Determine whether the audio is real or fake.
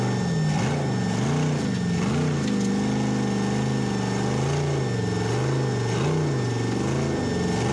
real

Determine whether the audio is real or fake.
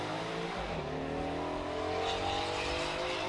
real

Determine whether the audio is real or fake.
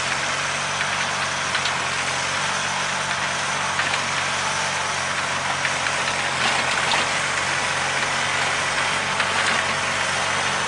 real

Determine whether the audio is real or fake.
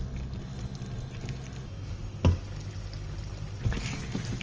real